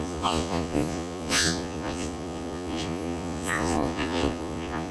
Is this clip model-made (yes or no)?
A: yes